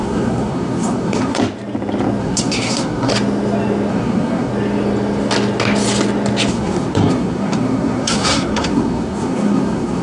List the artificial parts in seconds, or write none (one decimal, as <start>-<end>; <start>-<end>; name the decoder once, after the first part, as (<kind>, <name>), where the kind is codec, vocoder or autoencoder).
0.0-1.4 (codec, SNAC); 2.2-3.1; 3.9-4.5; 6.5-10.0

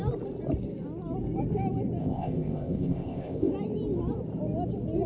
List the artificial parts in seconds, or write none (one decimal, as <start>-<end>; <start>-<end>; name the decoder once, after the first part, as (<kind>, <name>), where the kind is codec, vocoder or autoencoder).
2.0-3.5 (codec, ZipCodec)

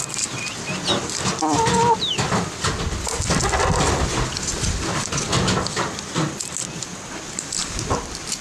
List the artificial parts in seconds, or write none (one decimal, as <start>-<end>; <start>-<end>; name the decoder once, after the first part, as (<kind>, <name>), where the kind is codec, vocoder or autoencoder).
6.9-7.6 (vocoder, BigVGAN v2)